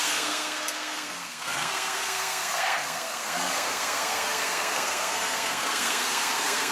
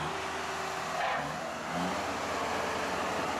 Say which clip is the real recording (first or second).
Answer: second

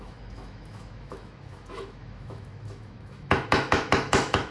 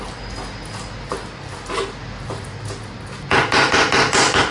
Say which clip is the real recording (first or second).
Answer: second